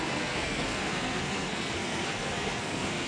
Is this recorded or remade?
remade